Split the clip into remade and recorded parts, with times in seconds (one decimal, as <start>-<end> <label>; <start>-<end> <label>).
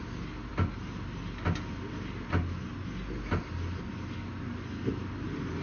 0.0-5.6 recorded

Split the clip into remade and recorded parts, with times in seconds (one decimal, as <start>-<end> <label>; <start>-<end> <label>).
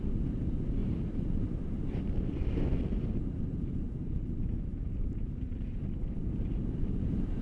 0.0-0.8 recorded; 0.8-2.0 remade; 2.0-2.9 recorded; 2.9-6.6 remade; 6.6-7.4 recorded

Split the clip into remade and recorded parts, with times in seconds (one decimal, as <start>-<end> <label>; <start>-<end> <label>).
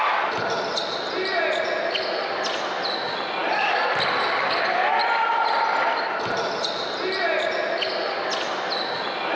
0.0-9.3 recorded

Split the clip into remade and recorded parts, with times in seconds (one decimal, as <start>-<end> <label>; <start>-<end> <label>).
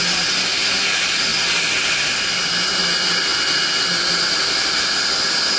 0.0-5.6 recorded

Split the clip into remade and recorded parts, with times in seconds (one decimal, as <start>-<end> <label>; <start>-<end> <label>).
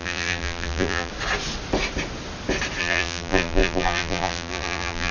0.0-1.1 remade; 1.1-2.8 recorded; 2.8-5.1 remade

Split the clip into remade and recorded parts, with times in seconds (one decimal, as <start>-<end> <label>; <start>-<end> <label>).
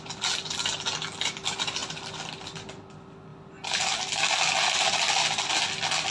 0.0-1.8 recorded; 1.8-2.4 remade; 2.4-6.1 recorded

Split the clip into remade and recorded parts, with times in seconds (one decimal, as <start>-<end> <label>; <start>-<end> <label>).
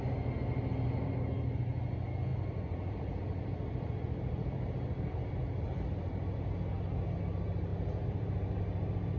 0.0-2.3 recorded; 2.3-6.6 remade; 6.6-7.7 recorded; 7.7-8.6 remade; 8.6-9.2 recorded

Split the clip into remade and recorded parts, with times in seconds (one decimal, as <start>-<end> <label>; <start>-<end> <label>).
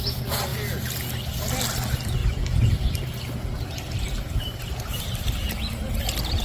0.0-2.2 recorded; 2.2-6.0 remade; 6.0-6.4 recorded